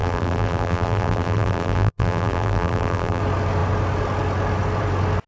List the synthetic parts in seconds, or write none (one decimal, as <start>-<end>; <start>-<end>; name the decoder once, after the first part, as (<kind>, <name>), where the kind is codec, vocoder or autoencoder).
0.0-3.2 (vocoder, BigVGAN v2)